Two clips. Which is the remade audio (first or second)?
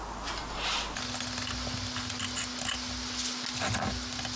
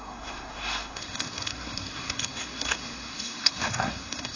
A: second